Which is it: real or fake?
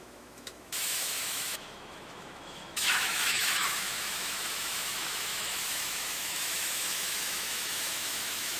fake